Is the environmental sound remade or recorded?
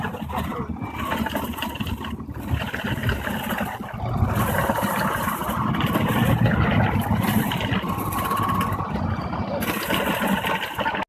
recorded